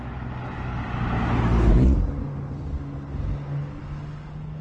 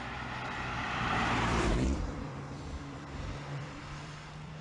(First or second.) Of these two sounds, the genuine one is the first